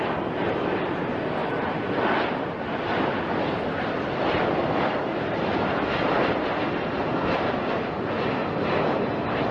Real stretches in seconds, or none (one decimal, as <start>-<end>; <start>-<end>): 0.0-1.4; 3.2-4.6; 5.8-8.4